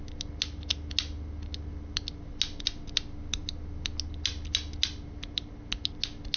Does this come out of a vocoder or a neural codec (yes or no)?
no